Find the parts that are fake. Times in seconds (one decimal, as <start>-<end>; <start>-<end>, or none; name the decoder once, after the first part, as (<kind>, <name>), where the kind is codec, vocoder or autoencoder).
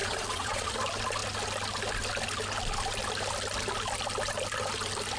0.0-0.7 (vocoder, Vocos)